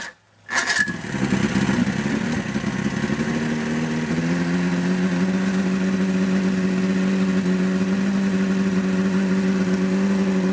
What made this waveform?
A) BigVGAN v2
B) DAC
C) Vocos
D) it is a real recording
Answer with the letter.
D